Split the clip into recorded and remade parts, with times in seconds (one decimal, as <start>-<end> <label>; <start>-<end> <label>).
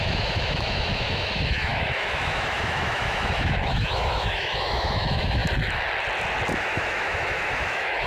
0.0-5.4 remade; 5.4-6.5 recorded; 6.5-8.1 remade